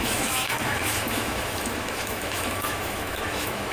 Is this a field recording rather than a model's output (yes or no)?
no